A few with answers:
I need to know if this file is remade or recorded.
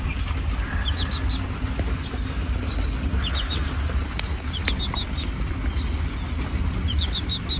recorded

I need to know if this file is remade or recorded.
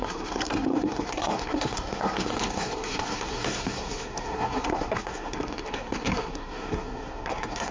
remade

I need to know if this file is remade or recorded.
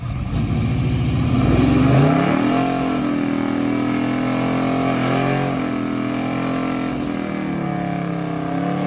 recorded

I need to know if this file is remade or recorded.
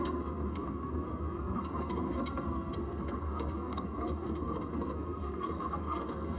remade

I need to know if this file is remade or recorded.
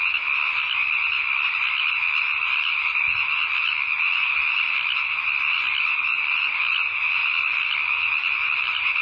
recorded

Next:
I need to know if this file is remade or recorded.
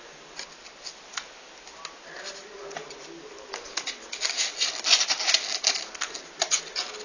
recorded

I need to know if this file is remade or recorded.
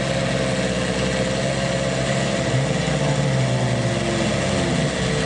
recorded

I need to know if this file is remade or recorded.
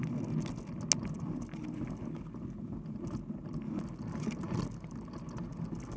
recorded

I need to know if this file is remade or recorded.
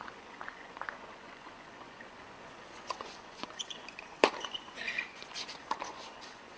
remade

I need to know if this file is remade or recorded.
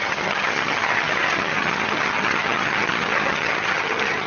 remade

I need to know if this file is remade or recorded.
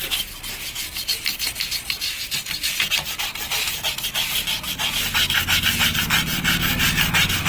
recorded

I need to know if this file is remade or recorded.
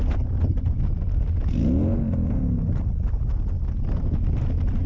recorded